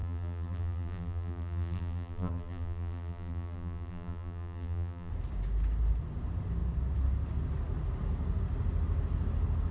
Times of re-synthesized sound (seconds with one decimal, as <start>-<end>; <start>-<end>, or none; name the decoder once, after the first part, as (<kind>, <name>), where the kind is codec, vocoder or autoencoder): 0.0-5.1 (vocoder, BigVGAN v2)